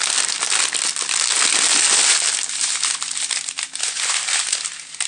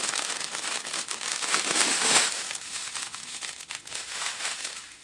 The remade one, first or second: second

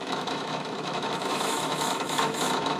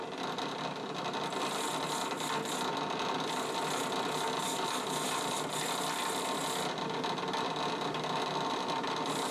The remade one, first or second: first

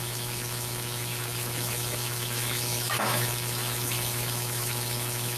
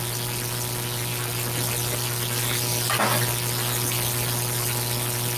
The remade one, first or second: first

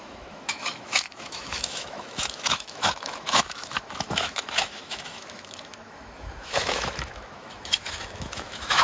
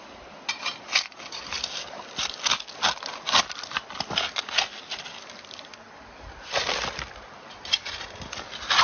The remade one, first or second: first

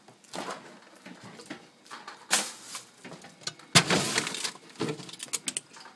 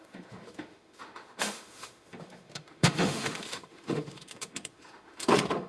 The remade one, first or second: second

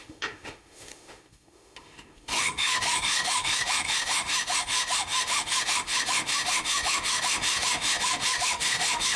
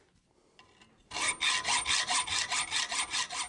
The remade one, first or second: first